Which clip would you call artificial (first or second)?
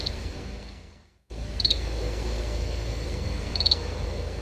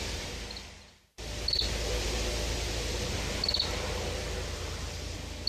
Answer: first